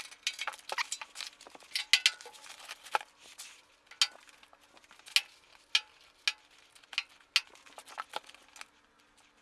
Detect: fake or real real